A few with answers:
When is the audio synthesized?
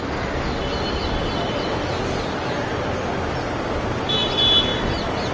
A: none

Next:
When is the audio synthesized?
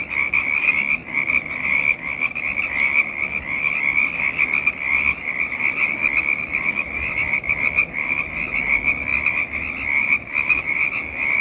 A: none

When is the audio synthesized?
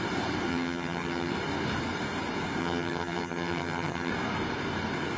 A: 0.5-1.3 (vocoder, HiFi-GAN); 2.6-4.1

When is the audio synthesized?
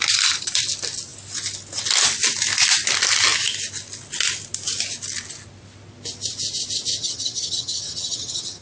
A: 7.0-8.6 (vocoder, HiFi-GAN)